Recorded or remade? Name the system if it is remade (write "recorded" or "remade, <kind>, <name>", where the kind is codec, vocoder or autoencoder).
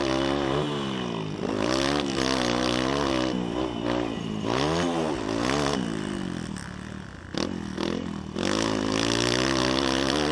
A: recorded